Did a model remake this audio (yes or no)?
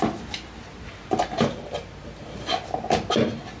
no